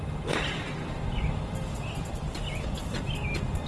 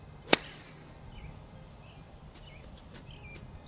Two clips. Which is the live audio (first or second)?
second